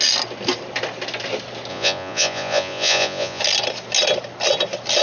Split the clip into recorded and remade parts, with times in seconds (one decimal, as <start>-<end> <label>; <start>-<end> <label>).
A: 0.0-1.7 recorded; 1.7-3.4 remade; 3.4-5.0 recorded